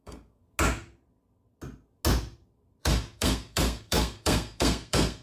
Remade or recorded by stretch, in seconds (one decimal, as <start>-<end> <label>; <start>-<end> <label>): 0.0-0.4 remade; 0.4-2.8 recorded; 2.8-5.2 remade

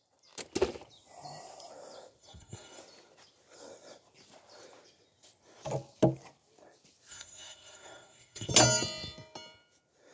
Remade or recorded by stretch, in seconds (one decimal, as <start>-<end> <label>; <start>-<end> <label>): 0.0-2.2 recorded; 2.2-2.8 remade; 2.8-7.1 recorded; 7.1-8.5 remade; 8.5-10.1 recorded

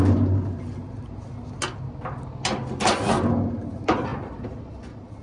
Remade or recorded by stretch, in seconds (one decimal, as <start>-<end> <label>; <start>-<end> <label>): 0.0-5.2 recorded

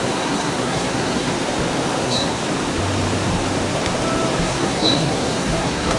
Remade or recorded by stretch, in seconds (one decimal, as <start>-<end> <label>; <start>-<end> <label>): 0.0-1.3 remade; 1.3-2.0 recorded; 2.0-2.4 remade; 2.4-4.4 recorded; 4.4-6.0 remade

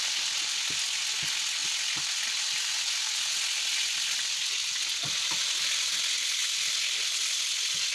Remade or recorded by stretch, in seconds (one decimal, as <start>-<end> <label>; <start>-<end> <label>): 0.0-7.9 recorded